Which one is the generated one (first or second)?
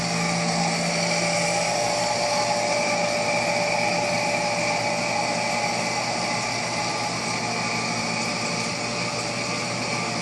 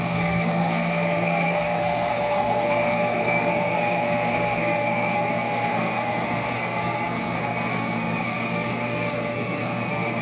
second